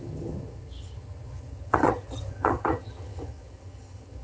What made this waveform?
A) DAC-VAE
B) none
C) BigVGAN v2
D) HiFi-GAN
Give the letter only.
D